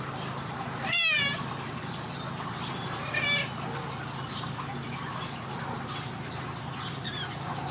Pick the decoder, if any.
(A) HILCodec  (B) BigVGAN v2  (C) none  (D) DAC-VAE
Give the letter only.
C